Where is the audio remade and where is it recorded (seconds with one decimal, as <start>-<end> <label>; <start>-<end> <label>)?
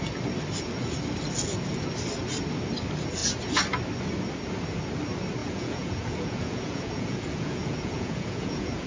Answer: 0.0-5.4 recorded; 5.4-8.9 remade